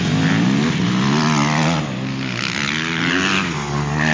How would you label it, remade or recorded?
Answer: recorded